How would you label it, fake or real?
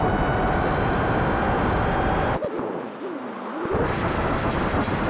real